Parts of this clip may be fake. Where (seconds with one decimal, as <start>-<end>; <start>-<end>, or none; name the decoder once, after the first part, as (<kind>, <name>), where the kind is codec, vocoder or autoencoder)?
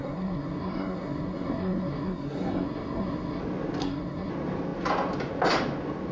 0.0-3.4 (codec, SNAC); 3.8-4.3